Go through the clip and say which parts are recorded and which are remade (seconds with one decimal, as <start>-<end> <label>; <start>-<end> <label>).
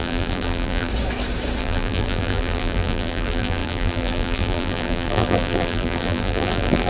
0.0-0.9 remade; 0.9-1.6 recorded; 1.6-6.9 remade